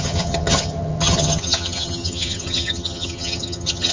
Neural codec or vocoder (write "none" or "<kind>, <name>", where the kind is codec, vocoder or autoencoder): vocoder, HiFi-GAN